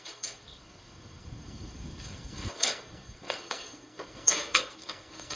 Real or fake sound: fake